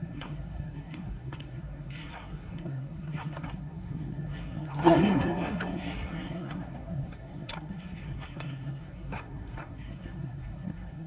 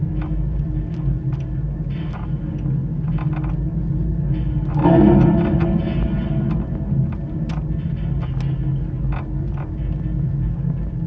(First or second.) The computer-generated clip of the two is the first